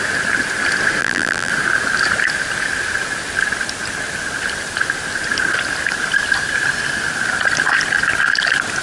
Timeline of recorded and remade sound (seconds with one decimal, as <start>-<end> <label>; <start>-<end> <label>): 0.0-1.0 recorded; 1.0-1.5 remade; 1.5-8.8 recorded